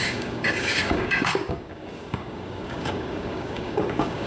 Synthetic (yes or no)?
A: yes